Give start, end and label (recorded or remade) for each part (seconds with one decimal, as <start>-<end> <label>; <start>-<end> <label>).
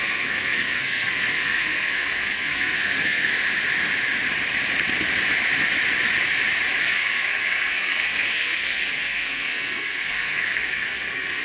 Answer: 0.0-3.3 remade; 3.3-6.8 recorded; 6.8-11.4 remade